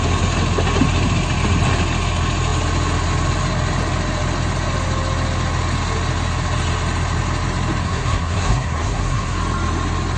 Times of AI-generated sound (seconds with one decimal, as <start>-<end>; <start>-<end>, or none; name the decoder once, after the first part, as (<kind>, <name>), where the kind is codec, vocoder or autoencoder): 7.8-9.4 (codec, SNAC)